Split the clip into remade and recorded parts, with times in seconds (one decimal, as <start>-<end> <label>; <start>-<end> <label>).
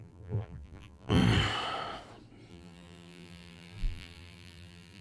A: 0.0-1.2 remade; 1.2-2.5 recorded; 2.5-5.0 remade